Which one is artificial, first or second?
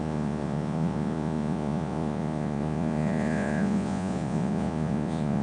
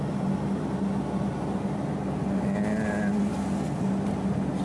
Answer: first